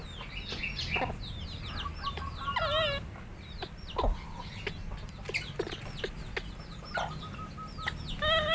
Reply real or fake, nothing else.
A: real